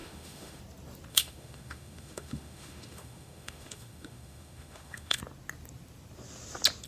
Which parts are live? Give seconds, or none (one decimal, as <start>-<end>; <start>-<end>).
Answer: 0.6-1.1; 5.2-6.9